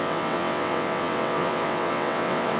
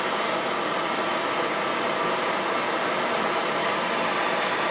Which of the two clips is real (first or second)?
second